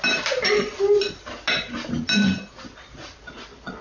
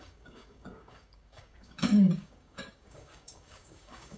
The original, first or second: first